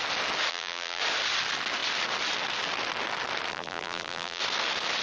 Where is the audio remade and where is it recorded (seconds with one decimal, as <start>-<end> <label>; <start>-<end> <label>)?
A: 0.0-0.5 recorded; 0.5-1.0 remade; 1.0-3.5 recorded; 3.5-4.4 remade; 4.4-5.0 recorded